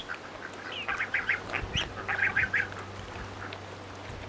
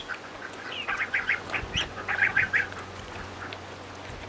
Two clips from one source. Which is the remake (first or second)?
second